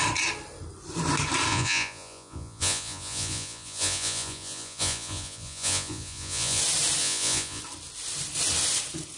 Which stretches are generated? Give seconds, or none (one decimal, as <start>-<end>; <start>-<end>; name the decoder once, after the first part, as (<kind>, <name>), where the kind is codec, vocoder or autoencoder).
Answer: 1.5-6.6 (vocoder, Vocos); 7.0-7.6